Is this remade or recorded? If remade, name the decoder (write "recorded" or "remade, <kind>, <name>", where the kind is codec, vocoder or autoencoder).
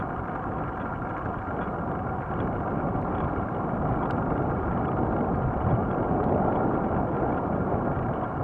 recorded